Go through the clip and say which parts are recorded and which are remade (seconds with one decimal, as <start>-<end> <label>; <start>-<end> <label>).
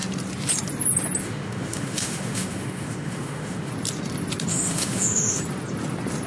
0.0-1.2 recorded; 1.2-3.7 remade; 3.7-4.5 recorded; 4.5-5.4 remade; 5.4-6.3 recorded